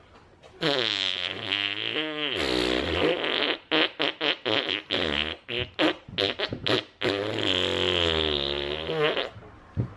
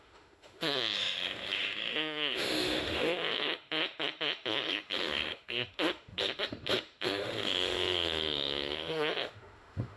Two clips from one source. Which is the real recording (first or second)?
first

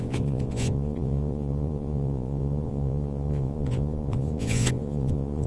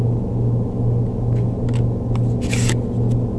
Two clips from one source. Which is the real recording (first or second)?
second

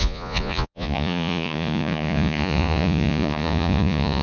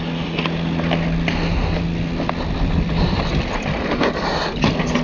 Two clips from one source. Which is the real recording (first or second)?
second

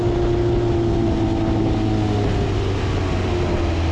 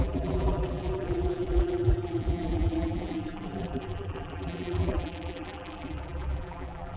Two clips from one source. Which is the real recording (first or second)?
first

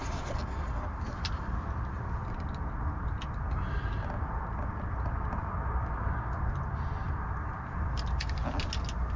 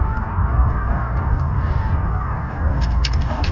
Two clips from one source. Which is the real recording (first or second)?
first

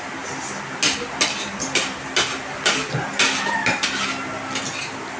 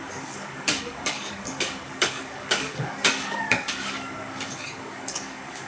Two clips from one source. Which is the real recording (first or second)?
first